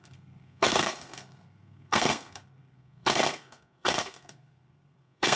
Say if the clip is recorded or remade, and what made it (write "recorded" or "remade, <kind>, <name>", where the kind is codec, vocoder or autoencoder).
remade, codec, SNAC